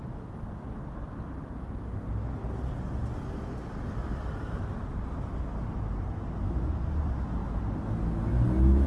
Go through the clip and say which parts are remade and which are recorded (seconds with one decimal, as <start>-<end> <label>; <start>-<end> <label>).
0.0-8.9 recorded